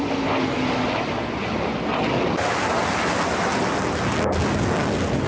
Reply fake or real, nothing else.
real